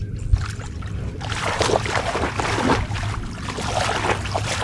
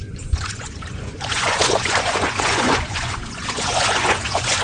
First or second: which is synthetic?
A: second